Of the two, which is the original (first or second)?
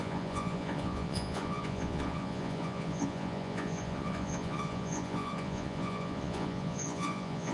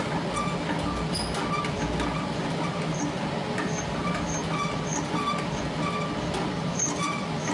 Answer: second